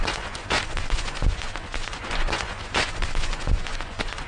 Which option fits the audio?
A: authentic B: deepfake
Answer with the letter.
B